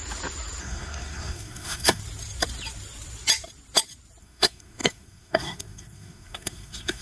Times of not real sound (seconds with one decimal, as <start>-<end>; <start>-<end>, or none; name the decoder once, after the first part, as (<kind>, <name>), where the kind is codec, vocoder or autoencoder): 0.6-2.0 (codec, SNAC); 4.2-7.0